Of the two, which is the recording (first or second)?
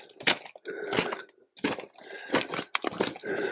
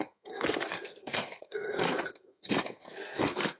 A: first